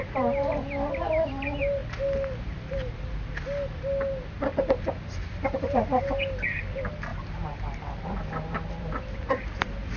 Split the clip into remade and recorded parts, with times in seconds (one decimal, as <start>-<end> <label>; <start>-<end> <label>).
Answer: 0.0-10.0 recorded